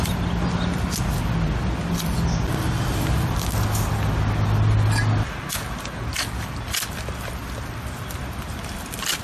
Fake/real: real